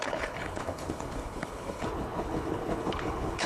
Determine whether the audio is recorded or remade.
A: remade